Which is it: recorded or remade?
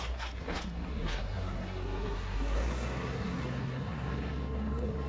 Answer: remade